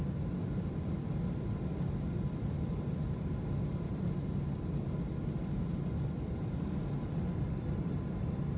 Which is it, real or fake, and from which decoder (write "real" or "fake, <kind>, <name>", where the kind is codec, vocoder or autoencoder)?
real